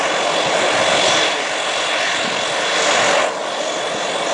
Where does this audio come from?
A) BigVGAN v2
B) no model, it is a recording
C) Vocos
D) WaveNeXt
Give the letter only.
B